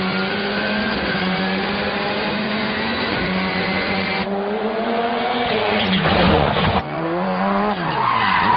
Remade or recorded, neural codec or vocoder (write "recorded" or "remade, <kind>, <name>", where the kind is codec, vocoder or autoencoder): remade, vocoder, Vocos